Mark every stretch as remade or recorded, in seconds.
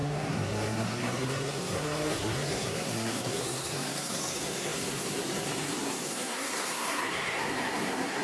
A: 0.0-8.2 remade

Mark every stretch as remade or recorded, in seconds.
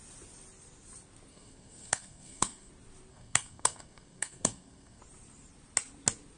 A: 0.0-1.3 recorded; 1.3-2.7 remade; 2.7-3.1 recorded; 3.1-5.0 remade; 5.0-6.4 recorded